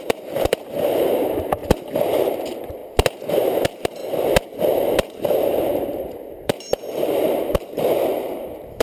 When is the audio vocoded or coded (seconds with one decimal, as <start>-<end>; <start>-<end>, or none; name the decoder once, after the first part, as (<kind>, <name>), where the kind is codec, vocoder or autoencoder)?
0.0-1.6 (vocoder, BigVGAN v2); 2.3-2.8; 3.3-4.0; 4.6-8.8

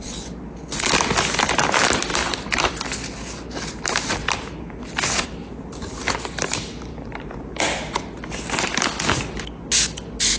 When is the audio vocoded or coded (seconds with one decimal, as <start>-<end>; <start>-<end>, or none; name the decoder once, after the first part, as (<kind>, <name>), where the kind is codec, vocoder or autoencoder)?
5.4-6.1 (vocoder, BigVGAN v2); 6.9-7.6

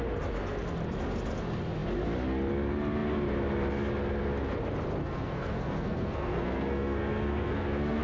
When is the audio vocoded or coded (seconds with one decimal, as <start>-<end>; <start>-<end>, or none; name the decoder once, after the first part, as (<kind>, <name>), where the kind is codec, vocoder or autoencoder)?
5.0-8.0 (codec, SNAC)

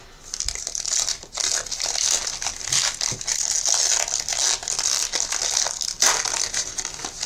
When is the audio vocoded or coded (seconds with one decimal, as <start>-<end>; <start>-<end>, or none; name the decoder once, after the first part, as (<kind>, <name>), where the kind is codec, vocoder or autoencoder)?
none